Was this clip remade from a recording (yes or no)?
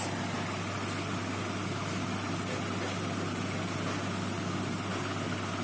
no